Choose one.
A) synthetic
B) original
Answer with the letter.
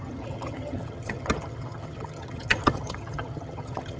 A